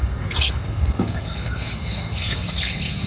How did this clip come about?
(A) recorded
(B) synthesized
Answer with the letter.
B